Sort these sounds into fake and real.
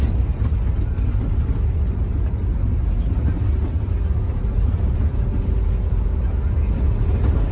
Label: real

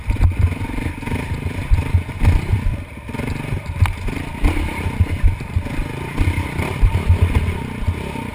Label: fake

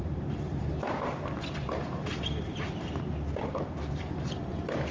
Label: fake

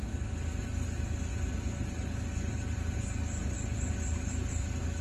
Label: real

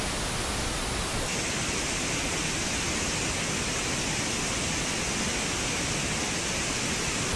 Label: real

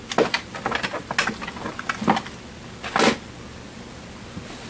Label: real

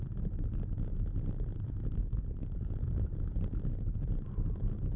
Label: real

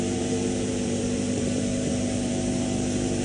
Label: fake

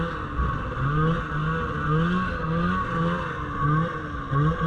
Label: real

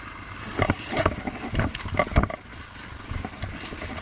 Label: real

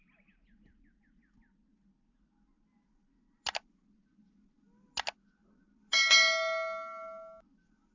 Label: real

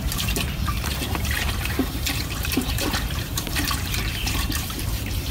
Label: fake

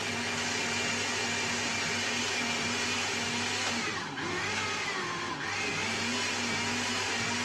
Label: real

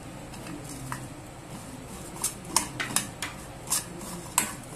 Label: real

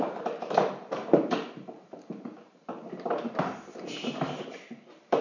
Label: fake